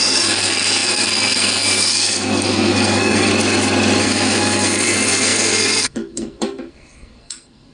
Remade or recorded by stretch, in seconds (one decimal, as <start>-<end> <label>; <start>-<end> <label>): 0.0-3.3 remade; 3.3-4.0 recorded; 4.0-7.7 remade